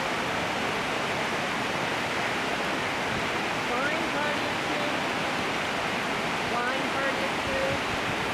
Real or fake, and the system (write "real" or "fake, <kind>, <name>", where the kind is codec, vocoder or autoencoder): real